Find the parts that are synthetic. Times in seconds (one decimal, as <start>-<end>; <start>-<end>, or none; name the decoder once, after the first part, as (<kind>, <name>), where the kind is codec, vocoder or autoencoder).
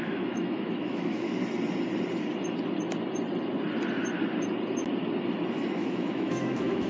0.0-1.4 (autoencoder, DAC-VAE); 5.5-6.9